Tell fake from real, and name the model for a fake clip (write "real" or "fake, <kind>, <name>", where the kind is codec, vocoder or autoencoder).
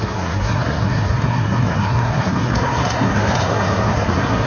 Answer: fake, codec, SNAC